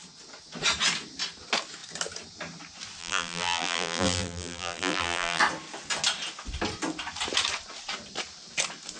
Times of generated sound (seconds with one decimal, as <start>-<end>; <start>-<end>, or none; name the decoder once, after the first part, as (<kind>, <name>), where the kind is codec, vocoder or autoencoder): 3.0-5.4 (vocoder, BigVGAN v2)